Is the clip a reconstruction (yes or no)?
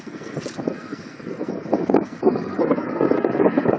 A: yes